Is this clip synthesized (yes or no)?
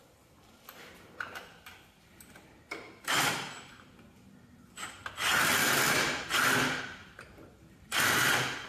no